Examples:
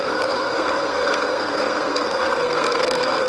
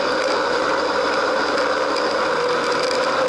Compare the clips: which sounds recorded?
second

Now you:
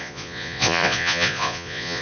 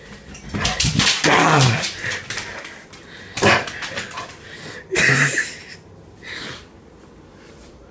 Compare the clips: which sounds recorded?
second